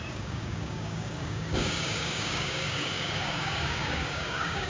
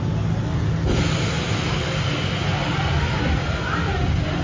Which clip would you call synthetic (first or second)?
first